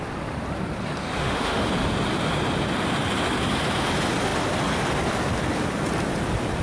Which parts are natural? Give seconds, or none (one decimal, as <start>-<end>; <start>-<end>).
0.0-1.2; 1.7-6.6